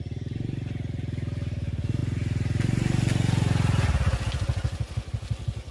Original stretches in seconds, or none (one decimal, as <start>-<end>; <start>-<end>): 0.0-5.7